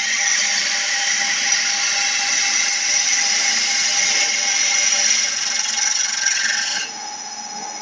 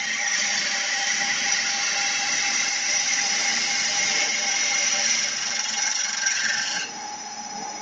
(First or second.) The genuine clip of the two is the first